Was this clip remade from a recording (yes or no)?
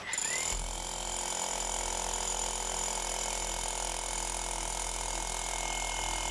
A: no